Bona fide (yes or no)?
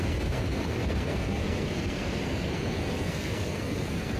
no